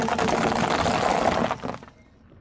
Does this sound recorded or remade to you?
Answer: recorded